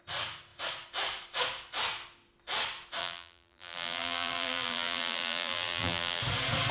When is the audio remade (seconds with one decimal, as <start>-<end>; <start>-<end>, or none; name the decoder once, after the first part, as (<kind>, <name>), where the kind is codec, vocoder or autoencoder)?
3.0-6.2 (vocoder, BigVGAN v2)